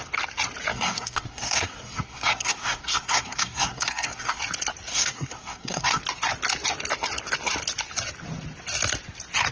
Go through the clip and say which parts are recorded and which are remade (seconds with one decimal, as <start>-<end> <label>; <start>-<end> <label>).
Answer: 0.0-0.7 recorded; 0.7-4.4 remade; 4.4-4.9 recorded; 4.9-6.0 remade; 6.0-9.5 recorded